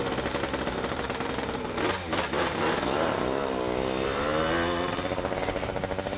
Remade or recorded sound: recorded